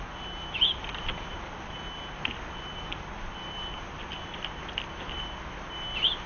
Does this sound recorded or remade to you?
recorded